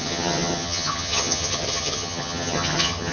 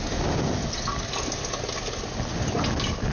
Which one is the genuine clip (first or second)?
second